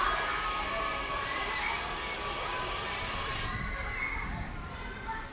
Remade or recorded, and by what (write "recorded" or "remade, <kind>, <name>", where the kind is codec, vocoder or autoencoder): recorded